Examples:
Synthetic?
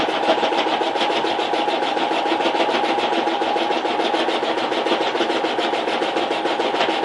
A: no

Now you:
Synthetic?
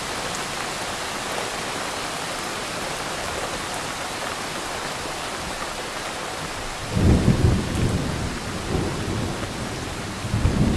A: no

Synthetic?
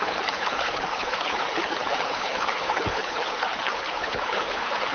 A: yes